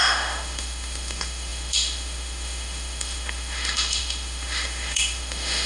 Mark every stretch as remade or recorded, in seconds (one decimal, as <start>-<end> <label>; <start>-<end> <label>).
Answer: 0.0-5.7 remade

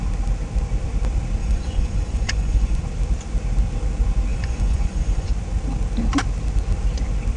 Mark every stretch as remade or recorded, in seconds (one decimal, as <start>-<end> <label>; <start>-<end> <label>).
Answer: 0.0-1.4 recorded; 1.4-2.8 remade; 2.8-4.3 recorded; 4.3-5.3 remade; 5.3-7.4 recorded